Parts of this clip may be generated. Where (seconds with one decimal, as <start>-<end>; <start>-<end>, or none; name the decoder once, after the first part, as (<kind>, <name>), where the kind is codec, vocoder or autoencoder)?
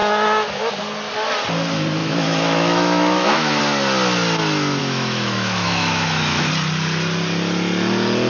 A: 0.0-0.7 (autoencoder, DAC-VAE); 2.0-3.6; 4.8-6.5